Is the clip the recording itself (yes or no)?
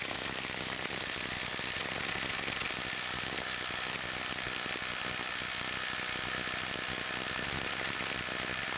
yes